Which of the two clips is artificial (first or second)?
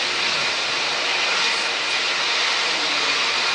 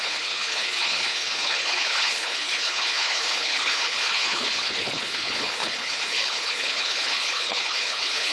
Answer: second